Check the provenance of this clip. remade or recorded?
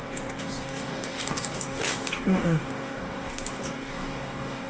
remade